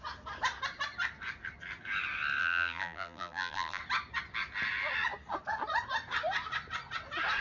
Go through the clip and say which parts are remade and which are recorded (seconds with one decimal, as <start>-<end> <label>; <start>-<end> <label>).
0.0-2.4 recorded; 2.4-3.8 remade; 3.8-7.4 recorded